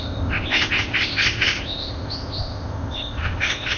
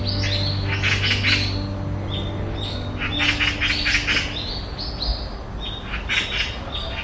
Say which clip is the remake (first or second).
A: first